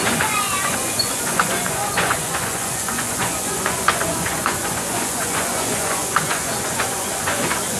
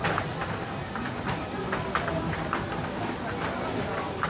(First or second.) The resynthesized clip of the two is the first